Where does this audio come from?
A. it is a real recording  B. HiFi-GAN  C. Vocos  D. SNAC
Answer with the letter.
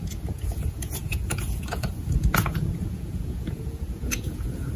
C